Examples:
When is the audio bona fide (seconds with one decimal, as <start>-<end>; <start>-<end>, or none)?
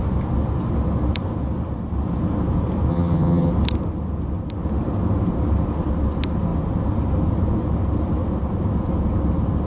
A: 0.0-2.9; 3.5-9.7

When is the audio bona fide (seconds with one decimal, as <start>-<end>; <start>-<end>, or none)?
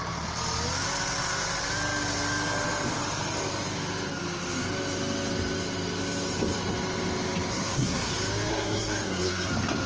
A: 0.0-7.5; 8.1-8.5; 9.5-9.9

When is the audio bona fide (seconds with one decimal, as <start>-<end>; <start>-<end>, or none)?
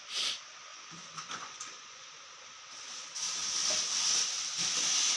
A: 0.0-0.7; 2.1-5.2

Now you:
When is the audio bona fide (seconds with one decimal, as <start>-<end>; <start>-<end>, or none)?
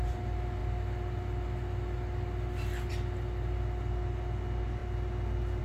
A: 0.0-5.6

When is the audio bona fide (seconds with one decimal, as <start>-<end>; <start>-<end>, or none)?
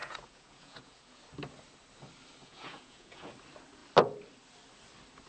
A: 1.2-2.4; 3.3-5.3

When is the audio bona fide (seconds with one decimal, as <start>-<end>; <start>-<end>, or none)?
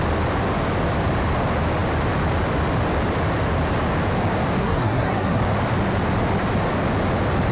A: 0.0-4.6; 5.4-7.5